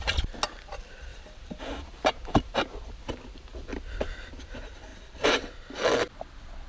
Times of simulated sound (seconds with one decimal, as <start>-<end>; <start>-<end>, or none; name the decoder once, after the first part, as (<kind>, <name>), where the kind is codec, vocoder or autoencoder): 1.1-2.6 (vocoder, BigVGAN v2); 4.9-5.5